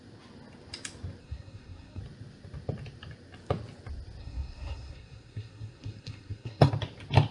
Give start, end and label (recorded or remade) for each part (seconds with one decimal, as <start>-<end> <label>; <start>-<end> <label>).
0.0-1.2 recorded; 1.2-2.0 remade; 2.0-4.2 recorded; 4.2-6.7 remade; 6.7-7.3 recorded